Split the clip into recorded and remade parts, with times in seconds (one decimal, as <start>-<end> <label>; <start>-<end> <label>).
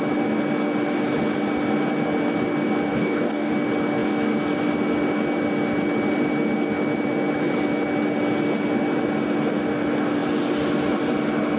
0.0-2.9 recorded; 2.9-3.5 remade; 3.5-11.6 recorded